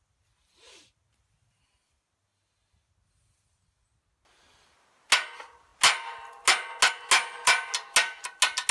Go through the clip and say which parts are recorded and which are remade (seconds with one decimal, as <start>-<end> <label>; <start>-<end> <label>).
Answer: 0.0-8.7 recorded